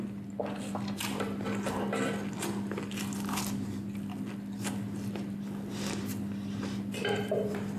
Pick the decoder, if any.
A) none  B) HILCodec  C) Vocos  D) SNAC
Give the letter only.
A